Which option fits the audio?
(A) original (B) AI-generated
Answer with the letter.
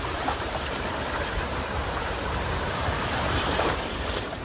B